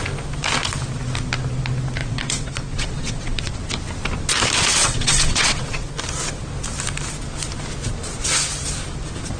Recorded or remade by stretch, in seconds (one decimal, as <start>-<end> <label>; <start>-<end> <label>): 0.0-2.0 recorded; 2.0-3.5 remade; 3.5-4.8 recorded; 4.8-5.9 remade; 5.9-9.4 recorded